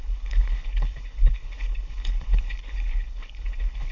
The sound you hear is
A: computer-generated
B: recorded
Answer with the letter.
A